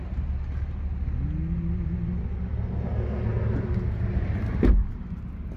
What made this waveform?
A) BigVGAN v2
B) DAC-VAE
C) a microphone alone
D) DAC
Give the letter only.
C